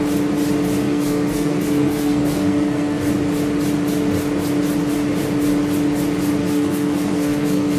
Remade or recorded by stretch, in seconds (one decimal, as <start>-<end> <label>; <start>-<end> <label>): 0.0-0.8 recorded; 0.8-3.1 remade; 3.1-6.4 recorded; 6.4-7.8 remade